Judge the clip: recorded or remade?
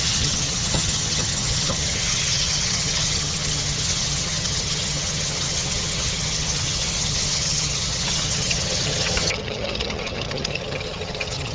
remade